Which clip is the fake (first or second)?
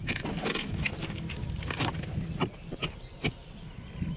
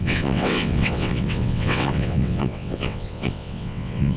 second